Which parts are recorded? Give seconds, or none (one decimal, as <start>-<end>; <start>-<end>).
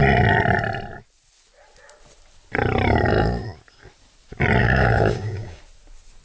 0.0-4.6; 5.6-6.2